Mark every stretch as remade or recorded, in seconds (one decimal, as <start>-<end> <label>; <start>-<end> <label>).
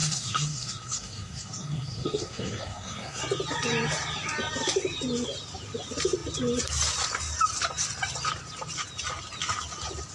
0.0-3.2 remade; 3.2-10.1 recorded